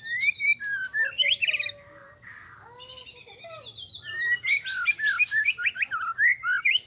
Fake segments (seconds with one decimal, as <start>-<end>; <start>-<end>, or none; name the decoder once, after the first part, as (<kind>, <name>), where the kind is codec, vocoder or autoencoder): none